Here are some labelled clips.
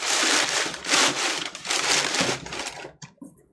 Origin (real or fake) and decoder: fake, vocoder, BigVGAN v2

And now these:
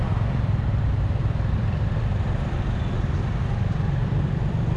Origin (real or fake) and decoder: fake, vocoder, BigVGAN v2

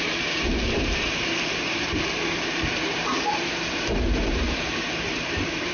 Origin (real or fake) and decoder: fake, vocoder, BigVGAN v2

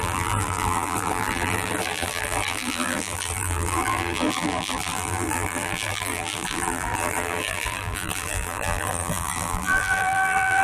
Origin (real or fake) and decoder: fake, vocoder, BigVGAN v2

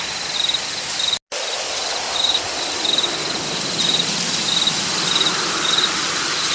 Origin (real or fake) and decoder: real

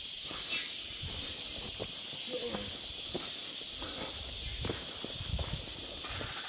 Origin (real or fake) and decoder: fake, vocoder, BigVGAN v2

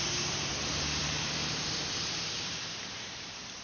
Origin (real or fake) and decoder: fake, vocoder, BigVGAN v2